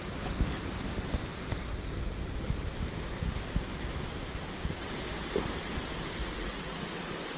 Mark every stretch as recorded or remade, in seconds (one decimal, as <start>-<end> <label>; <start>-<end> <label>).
0.0-6.2 recorded; 6.2-6.8 remade; 6.8-7.4 recorded